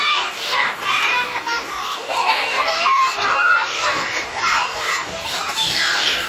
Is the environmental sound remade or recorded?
remade